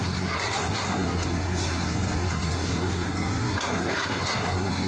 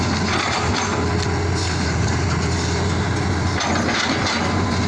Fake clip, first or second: first